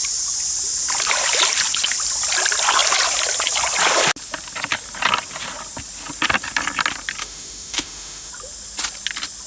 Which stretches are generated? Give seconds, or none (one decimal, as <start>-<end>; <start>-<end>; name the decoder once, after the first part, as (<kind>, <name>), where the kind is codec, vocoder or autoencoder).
7.2-8.3 (autoencoder, DAC-VAE)